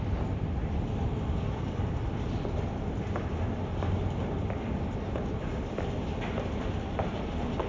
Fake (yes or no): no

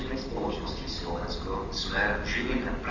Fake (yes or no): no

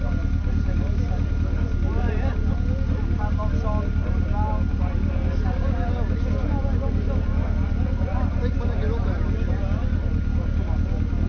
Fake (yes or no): no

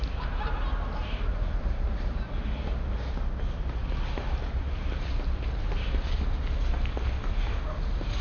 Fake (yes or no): no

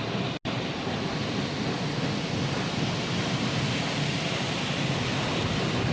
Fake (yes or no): no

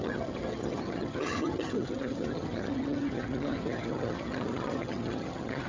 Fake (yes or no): yes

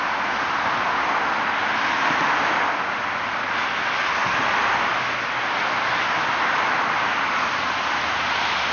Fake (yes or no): no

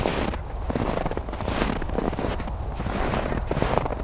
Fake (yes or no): no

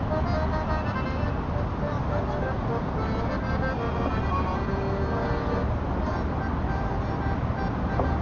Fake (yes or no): no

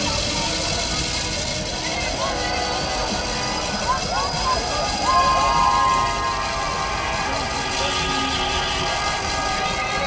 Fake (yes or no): no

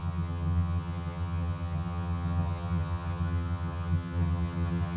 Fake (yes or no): yes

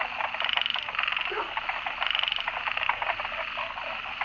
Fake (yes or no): no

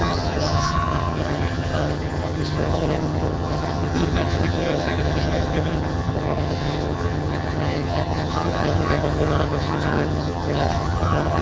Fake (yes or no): yes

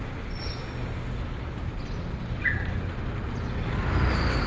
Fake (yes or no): no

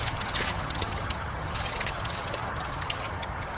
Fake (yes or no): yes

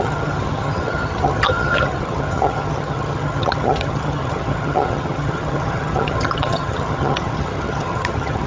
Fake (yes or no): yes